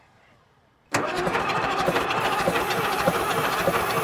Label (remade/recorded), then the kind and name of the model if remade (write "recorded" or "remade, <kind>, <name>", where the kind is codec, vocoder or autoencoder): remade, vocoder, BigVGAN v2